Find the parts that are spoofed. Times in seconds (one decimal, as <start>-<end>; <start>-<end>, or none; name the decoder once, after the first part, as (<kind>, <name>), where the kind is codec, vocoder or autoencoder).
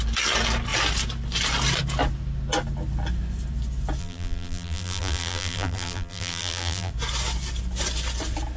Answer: 4.0-6.9 (vocoder, BigVGAN v2)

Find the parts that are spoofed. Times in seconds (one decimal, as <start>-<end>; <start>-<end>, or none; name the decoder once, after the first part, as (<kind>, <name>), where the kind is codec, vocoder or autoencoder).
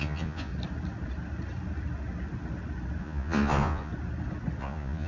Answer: 0.0-0.5 (vocoder, Vocos); 3.0-3.9; 4.6-5.1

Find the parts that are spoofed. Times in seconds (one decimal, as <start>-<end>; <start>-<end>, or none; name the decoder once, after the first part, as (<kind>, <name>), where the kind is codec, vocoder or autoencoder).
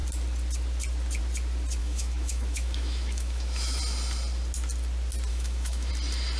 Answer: 1.8-3.8 (autoencoder, DAC-VAE); 5.3-5.9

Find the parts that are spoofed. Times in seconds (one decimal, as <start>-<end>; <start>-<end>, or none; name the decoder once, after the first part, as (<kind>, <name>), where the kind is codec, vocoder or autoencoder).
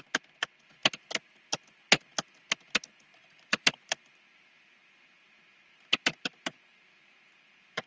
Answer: 3.1-7.9 (vocoder, BigVGAN v2)